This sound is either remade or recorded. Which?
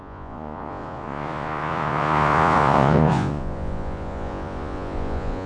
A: remade